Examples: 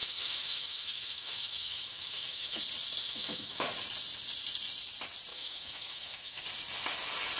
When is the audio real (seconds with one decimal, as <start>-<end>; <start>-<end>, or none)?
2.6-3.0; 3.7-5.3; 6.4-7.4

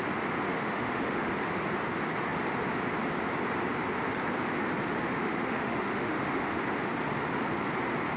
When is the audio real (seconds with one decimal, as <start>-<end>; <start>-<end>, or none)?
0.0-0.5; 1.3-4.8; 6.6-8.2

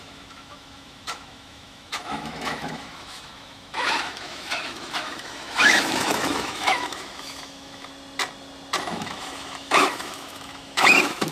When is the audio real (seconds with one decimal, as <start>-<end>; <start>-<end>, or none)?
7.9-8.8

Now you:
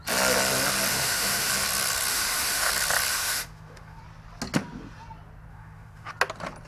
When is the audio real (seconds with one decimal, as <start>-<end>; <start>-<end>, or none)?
0.0-0.9; 1.5-2.1; 2.7-3.1; 4.0-5.5; 6.1-6.7

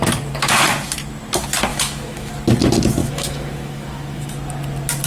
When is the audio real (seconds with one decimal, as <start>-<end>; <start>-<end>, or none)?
0.0-1.7; 2.3-3.0; 4.3-5.1

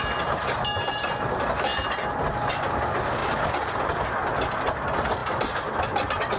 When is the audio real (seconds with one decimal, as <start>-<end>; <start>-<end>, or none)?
0.0-6.4

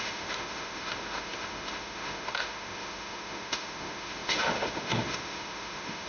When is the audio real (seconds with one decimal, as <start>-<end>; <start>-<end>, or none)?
none